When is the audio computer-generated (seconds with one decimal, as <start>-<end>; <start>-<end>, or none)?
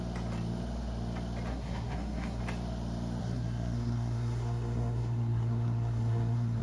1.5-2.4; 3.2-6.6